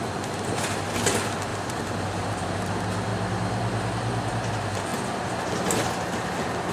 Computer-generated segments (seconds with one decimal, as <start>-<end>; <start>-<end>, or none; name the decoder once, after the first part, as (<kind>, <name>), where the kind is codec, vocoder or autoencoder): 1.5-2.7 (vocoder, BigVGAN v2)